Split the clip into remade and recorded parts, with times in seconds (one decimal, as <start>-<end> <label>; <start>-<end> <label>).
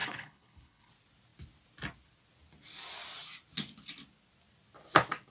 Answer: 0.0-0.9 remade; 0.9-5.3 recorded